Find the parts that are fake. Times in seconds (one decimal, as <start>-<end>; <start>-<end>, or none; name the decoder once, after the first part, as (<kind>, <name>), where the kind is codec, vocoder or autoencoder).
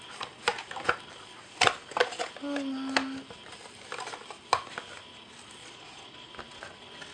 5.6-6.3 (vocoder, Vocos)